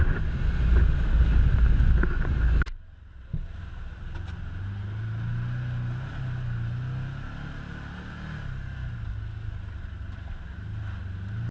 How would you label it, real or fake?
real